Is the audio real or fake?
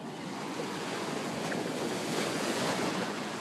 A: fake